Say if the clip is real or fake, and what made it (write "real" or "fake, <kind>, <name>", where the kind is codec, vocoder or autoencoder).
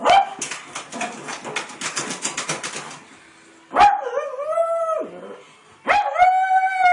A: real